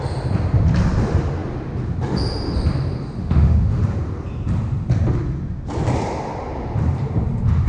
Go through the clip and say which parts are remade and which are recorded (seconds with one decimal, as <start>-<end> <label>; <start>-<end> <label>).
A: 0.0-3.2 recorded; 3.2-3.8 remade; 3.8-7.7 recorded